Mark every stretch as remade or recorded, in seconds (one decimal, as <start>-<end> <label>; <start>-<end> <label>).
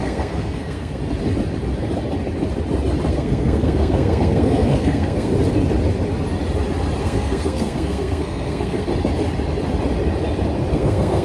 0.0-1.0 remade; 1.0-3.1 recorded; 3.1-5.3 remade; 5.3-7.0 recorded; 7.0-8.9 remade; 8.9-10.7 recorded; 10.7-11.2 remade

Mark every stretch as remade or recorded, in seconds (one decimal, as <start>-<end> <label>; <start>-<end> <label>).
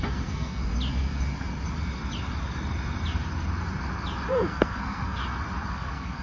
0.0-0.6 remade; 0.6-4.3 recorded; 4.3-5.2 remade; 5.2-5.7 recorded; 5.7-6.2 remade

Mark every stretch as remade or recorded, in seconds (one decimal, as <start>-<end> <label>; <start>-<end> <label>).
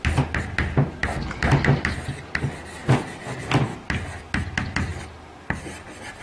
0.0-6.2 recorded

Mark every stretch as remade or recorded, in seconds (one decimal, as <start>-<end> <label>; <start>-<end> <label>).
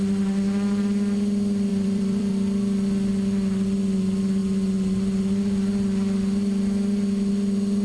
0.0-1.7 recorded; 1.7-2.3 remade; 2.3-7.8 recorded